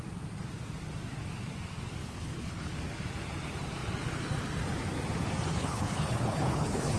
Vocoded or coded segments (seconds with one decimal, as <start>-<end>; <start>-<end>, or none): 2.0-2.7; 5.5-7.0